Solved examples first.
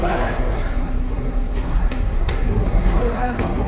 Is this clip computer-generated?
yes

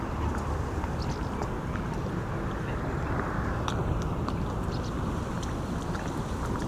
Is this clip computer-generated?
no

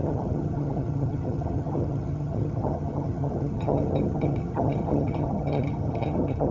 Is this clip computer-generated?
yes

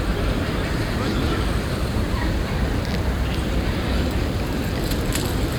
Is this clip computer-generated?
yes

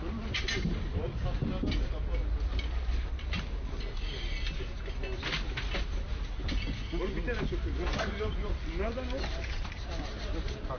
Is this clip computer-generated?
no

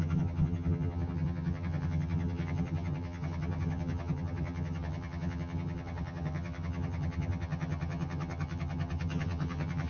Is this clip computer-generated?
yes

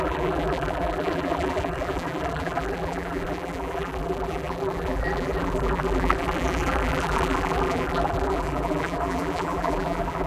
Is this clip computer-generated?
yes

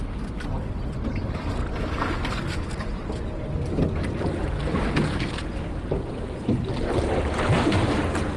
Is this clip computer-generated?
no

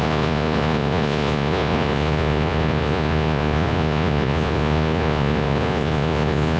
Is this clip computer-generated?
yes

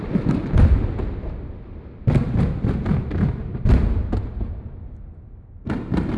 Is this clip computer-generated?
no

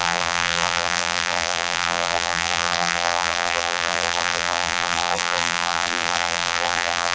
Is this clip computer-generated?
yes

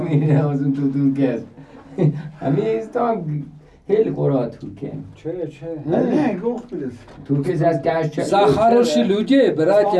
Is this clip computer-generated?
no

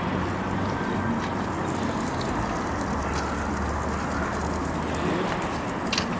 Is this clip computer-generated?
no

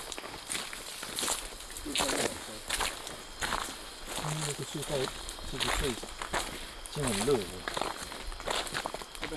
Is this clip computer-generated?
no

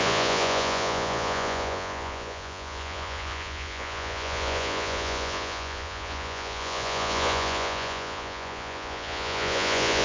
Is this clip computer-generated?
yes